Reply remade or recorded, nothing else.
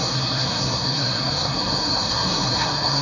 remade